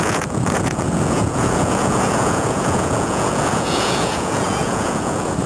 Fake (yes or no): yes